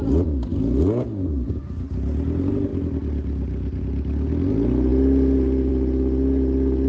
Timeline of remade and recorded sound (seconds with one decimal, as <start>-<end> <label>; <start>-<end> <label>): 0.0-6.9 recorded

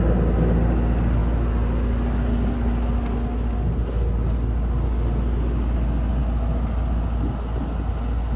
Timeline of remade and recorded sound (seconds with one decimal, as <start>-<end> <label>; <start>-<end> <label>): 0.0-8.4 recorded

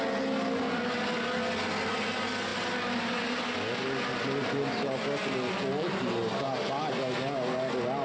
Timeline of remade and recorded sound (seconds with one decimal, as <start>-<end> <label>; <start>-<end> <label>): 0.0-8.0 recorded

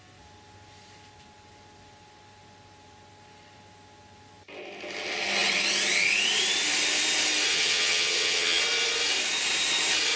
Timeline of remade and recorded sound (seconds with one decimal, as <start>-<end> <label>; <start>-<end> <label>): 0.0-7.5 recorded; 7.5-8.6 remade; 8.6-10.2 recorded

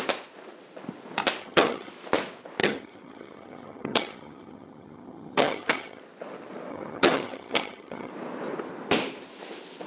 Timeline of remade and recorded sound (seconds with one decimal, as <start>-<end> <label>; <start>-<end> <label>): 0.0-1.4 recorded; 1.4-1.9 remade; 1.9-2.6 recorded; 2.6-6.0 remade; 6.0-6.7 recorded; 6.7-8.1 remade; 8.1-9.9 recorded